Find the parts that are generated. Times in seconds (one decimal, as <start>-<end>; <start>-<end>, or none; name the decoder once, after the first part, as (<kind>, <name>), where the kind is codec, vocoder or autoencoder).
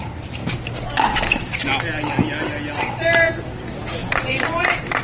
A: 0.0-0.4 (vocoder, BigVGAN v2); 3.4-4.0; 4.6-5.0